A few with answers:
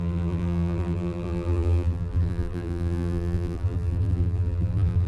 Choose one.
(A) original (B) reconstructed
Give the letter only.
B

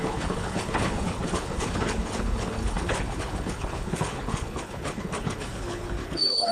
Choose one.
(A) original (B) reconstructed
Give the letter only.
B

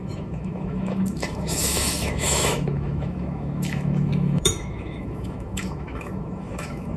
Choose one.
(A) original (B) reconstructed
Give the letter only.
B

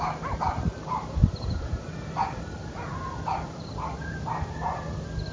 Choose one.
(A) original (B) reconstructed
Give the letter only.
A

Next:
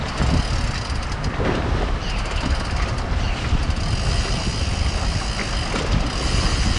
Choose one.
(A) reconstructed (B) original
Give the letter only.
B